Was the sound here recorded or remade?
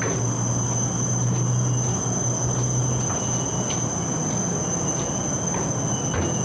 recorded